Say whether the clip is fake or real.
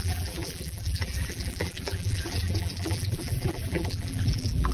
fake